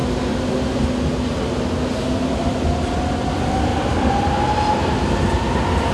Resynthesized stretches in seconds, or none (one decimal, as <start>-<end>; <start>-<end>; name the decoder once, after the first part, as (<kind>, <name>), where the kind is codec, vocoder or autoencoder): 3.7-4.2 (vocoder, BigVGAN v2)